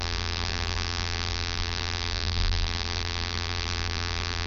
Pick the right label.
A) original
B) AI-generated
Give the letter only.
B